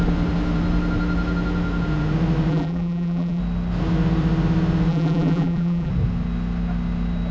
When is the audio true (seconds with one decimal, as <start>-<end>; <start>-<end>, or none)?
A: 0.0-2.5; 3.4-4.9; 5.9-7.3